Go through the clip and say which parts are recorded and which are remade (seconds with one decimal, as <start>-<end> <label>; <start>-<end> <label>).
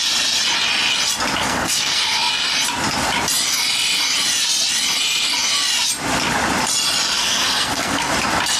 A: 0.0-1.4 recorded; 1.4-2.3 remade; 2.3-7.2 recorded; 7.2-8.1 remade; 8.1-8.6 recorded